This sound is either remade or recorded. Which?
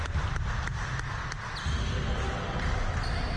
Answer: recorded